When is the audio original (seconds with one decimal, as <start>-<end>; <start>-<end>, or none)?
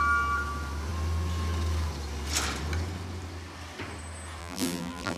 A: 0.0-4.4